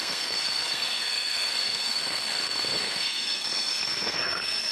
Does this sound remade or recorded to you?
remade